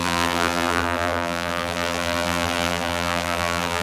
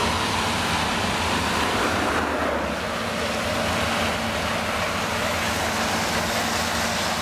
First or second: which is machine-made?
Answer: first